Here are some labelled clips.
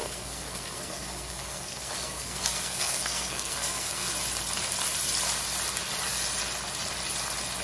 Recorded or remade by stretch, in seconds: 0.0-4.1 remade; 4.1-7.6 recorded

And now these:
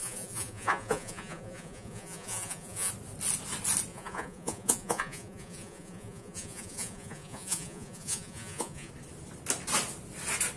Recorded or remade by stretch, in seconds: 0.0-2.9 remade; 2.9-3.9 recorded; 3.9-8.9 remade; 8.9-10.6 recorded

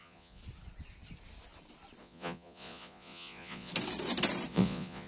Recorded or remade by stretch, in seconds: 0.0-0.4 remade; 0.4-2.0 recorded; 2.0-3.7 remade; 3.7-4.5 recorded; 4.5-5.1 remade

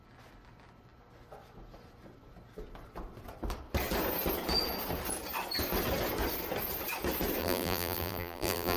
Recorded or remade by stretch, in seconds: 0.0-7.4 recorded; 7.4-8.8 remade

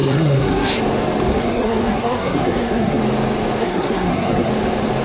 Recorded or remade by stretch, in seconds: 0.0-0.8 remade; 0.8-1.3 recorded; 1.3-3.0 remade; 3.0-3.6 recorded; 3.6-4.5 remade; 4.5-5.0 recorded